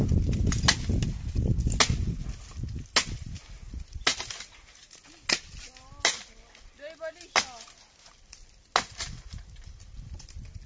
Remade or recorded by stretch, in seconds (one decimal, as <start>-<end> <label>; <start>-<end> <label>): 0.0-10.7 recorded